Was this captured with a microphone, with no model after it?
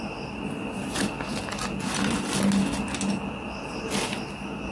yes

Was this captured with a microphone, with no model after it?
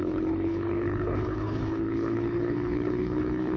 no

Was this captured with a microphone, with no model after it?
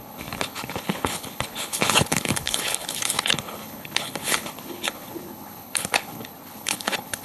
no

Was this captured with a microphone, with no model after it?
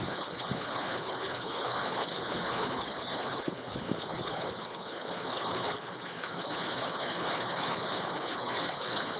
no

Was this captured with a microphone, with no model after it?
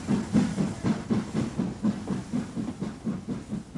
yes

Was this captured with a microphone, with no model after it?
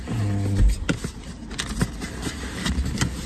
yes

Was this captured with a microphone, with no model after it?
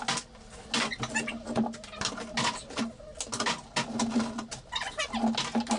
yes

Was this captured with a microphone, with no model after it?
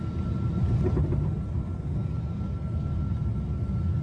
yes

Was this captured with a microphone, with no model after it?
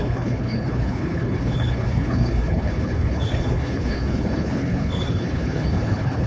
no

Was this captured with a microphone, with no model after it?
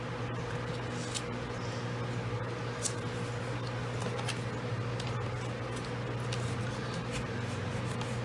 yes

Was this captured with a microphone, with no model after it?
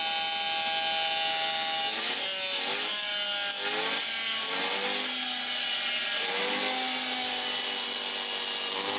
yes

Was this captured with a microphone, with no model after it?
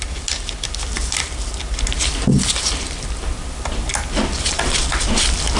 yes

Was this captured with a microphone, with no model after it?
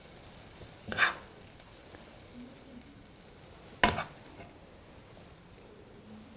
yes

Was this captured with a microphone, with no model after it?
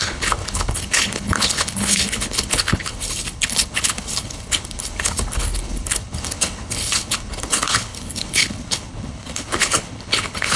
no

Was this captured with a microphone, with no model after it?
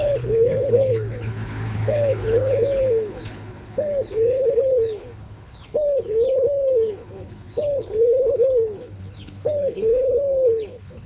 no